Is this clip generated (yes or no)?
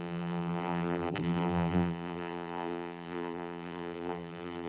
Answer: yes